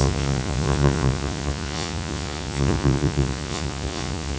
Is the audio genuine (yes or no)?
no